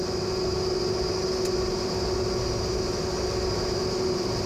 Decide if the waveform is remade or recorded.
recorded